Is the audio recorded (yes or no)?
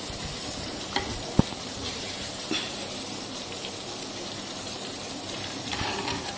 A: no